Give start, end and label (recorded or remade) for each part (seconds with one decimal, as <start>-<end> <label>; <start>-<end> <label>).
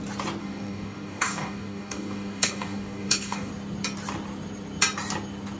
0.0-0.4 recorded; 0.4-3.5 remade; 3.5-5.6 recorded